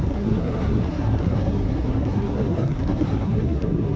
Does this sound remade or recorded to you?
remade